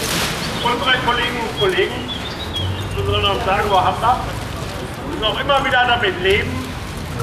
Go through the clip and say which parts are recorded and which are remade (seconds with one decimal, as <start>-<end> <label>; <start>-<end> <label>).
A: 0.0-0.7 recorded; 0.7-2.5 remade; 2.5-3.1 recorded; 3.1-4.3 remade; 4.3-6.1 recorded; 6.1-6.8 remade; 6.8-7.2 recorded